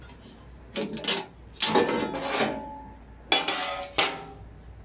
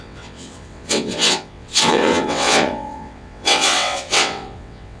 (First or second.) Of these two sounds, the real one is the first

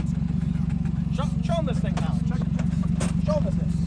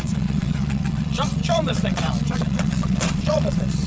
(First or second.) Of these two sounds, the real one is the first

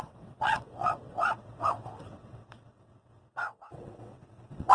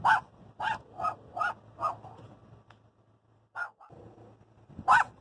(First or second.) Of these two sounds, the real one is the second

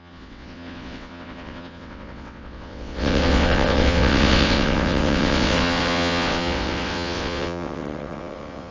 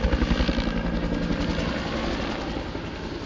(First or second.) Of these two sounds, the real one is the second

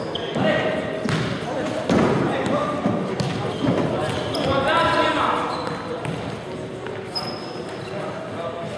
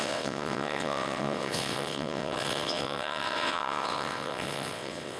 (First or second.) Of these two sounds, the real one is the first